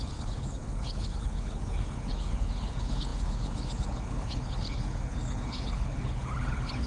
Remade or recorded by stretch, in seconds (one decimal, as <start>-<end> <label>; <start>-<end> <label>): 0.0-6.9 remade